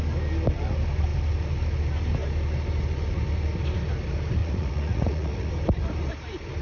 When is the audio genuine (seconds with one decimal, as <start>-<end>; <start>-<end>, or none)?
0.0-4.4; 5.5-6.6

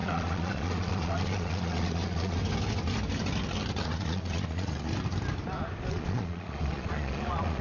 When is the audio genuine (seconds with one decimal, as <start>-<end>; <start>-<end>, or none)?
2.4-3.8; 4.9-5.9